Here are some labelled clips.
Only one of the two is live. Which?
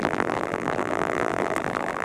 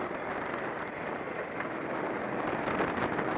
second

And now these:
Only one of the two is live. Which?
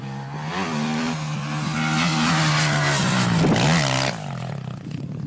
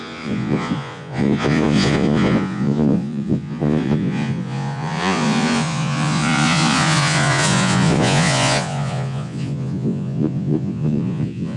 first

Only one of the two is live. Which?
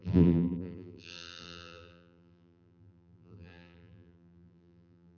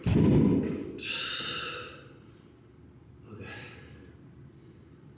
second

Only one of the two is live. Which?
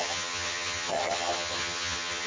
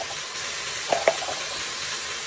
second